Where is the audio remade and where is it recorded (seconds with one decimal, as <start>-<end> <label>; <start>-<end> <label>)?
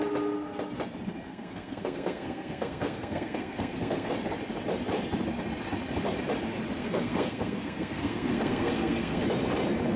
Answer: 0.0-1.3 recorded; 1.3-4.1 remade; 4.1-6.8 recorded; 6.8-9.2 remade; 9.2-10.0 recorded